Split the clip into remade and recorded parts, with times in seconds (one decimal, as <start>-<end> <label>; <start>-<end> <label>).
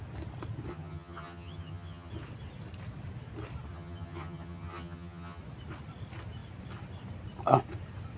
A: 0.0-0.7 recorded; 0.7-2.1 remade; 2.1-3.7 recorded; 3.7-5.4 remade; 5.4-8.2 recorded